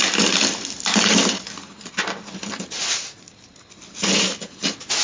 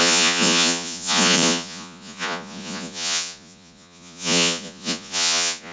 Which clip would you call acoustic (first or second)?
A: first